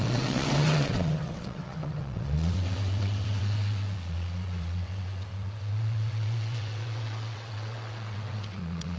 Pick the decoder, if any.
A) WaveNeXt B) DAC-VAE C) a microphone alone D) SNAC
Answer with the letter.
A